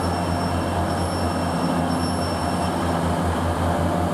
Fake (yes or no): no